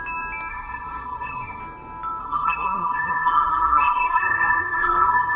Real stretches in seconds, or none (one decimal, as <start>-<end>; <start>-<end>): 0.0-0.5; 1.6-2.2